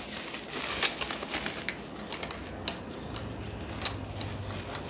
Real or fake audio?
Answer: real